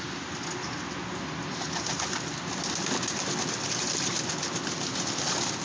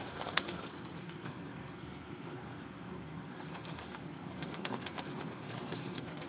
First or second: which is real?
first